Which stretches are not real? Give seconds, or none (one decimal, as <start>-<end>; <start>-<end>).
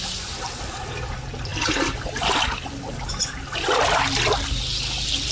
none